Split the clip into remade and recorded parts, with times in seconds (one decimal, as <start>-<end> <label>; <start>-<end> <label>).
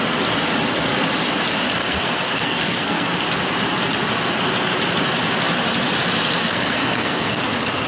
0.0-1.8 recorded; 1.8-3.1 remade; 3.1-6.4 recorded; 6.4-7.4 remade; 7.4-7.9 recorded